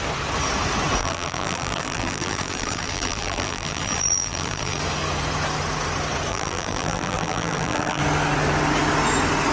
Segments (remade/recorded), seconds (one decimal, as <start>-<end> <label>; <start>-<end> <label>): 0.0-1.0 recorded; 1.0-4.8 remade; 4.8-6.3 recorded; 6.3-8.0 remade; 8.0-9.5 recorded